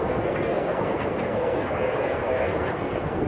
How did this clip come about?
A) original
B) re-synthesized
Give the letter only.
B